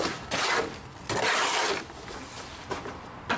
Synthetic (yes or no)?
no